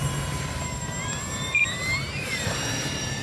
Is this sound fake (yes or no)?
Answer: yes